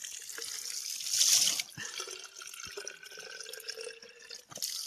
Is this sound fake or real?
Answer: real